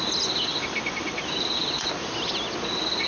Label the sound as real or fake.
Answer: real